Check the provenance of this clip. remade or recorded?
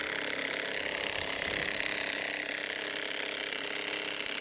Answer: recorded